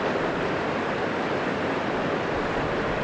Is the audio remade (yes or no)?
no